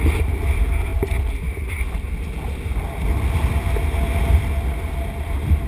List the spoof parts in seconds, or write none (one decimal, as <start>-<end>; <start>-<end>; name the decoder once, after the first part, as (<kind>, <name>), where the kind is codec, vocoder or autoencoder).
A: none